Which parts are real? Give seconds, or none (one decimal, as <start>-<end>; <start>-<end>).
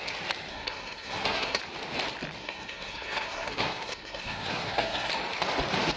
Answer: 0.0-0.5; 1.6-2.4; 5.1-6.0